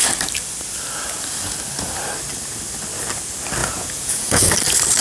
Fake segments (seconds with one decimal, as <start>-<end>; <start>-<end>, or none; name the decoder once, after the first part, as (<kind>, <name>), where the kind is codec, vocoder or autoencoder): 3.6-4.5 (vocoder, Vocos)